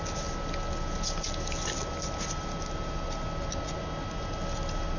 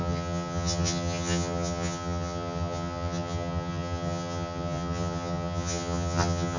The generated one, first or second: second